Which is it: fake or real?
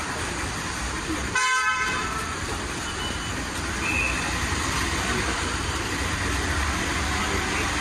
real